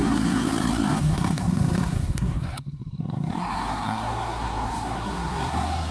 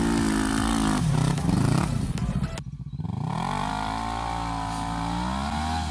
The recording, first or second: second